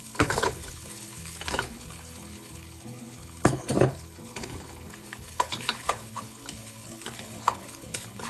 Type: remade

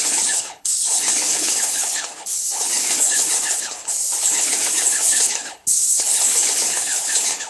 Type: remade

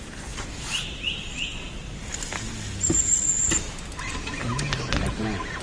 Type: recorded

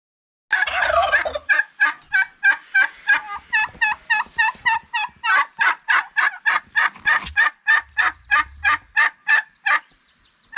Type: recorded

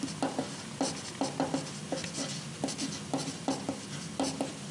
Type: recorded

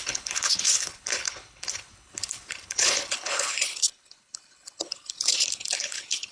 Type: remade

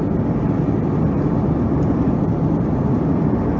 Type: recorded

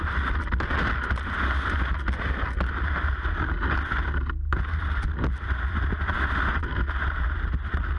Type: recorded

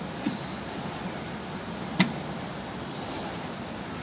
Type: recorded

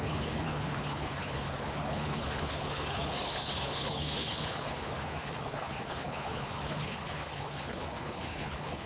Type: remade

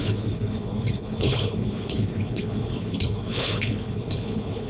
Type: remade